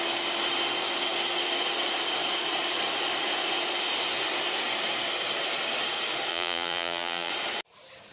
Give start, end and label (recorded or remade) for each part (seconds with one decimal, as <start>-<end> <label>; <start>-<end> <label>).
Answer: 0.0-6.3 recorded; 6.3-7.3 remade; 7.3-8.1 recorded